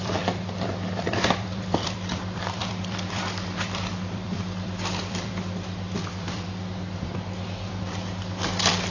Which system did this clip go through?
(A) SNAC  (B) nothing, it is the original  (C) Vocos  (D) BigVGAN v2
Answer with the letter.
D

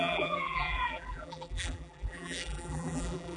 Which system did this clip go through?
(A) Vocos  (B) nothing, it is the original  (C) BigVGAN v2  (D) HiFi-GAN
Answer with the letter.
C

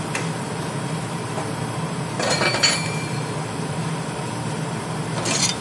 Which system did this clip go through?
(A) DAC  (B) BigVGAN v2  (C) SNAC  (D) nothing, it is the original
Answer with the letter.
B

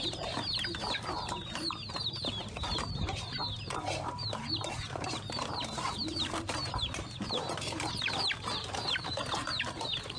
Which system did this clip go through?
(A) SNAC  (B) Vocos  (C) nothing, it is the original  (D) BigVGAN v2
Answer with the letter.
D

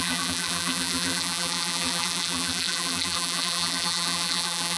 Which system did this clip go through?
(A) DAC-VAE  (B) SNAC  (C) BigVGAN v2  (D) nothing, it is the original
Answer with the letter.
C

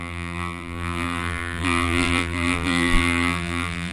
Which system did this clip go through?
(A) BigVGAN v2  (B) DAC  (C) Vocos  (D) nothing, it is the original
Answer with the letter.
A